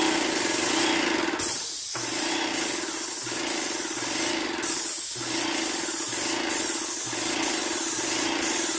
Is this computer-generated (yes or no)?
no